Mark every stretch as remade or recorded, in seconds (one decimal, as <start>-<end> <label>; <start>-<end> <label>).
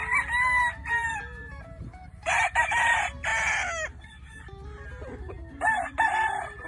0.0-0.7 recorded; 0.7-3.3 remade; 3.3-4.4 recorded; 4.4-6.7 remade